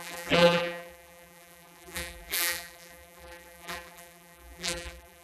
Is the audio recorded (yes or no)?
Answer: no